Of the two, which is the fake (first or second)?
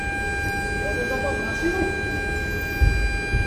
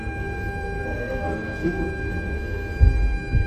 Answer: second